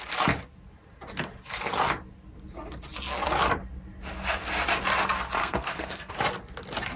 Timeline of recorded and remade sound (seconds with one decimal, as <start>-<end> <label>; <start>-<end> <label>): 0.0-5.4 recorded; 5.4-6.1 remade; 6.1-7.0 recorded